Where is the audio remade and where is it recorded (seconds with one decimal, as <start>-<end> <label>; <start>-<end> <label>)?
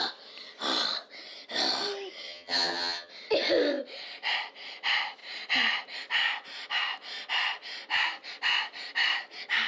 0.0-2.3 recorded; 2.3-3.1 remade; 3.1-9.7 recorded